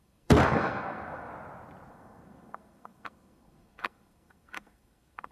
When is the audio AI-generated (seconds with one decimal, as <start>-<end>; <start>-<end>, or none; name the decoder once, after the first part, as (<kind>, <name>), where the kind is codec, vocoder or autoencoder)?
0.0-1.3 (codec, SNAC); 1.9-5.3